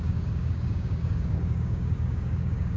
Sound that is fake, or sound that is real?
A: fake